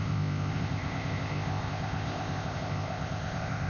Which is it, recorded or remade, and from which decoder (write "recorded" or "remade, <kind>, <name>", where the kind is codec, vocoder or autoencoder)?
remade, codec, ZipCodec